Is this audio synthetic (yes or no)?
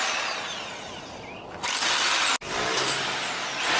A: no